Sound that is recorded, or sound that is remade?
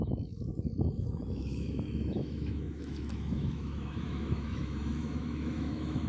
remade